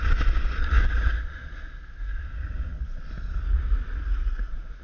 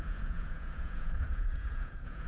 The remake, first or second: second